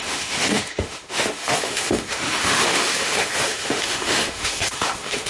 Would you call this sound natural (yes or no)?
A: no